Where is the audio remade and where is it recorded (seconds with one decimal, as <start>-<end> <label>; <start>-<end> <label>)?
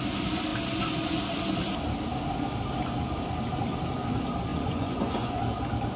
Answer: 0.0-4.5 recorded; 4.5-5.4 remade; 5.4-6.0 recorded